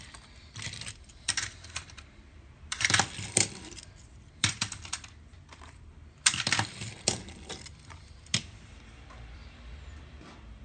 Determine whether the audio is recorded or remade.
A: remade